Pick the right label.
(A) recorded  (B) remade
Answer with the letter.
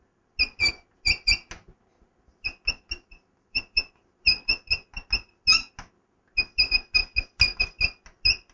A